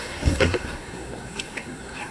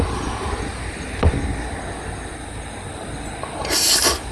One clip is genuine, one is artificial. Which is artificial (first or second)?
first